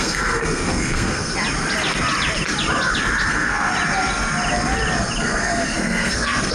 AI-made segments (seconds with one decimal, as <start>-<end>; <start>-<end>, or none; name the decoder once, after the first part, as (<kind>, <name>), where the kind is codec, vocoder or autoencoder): 0.0-1.3 (codec, SNAC); 3.3-3.7; 5.2-6.5